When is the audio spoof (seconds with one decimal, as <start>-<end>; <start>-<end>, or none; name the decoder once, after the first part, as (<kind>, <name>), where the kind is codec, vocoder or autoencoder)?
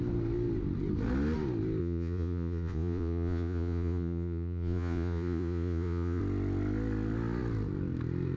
1.8-6.2 (vocoder, Vocos)